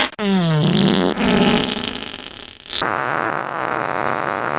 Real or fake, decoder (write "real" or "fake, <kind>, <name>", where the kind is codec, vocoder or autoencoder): real